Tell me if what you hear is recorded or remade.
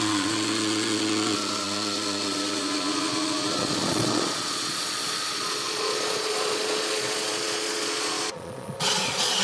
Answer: remade